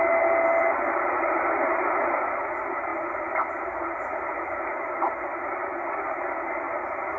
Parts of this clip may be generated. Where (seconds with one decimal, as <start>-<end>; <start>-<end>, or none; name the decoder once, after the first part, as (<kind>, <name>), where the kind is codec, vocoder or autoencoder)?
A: none